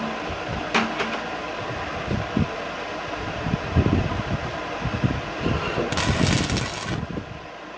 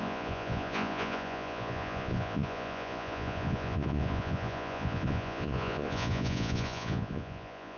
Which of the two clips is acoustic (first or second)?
first